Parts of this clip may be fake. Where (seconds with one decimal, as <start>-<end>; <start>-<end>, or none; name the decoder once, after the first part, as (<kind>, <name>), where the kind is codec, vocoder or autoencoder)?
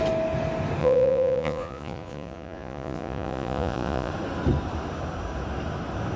0.8-4.1 (vocoder, Vocos)